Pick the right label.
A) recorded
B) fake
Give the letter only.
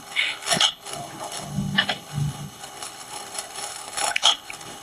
B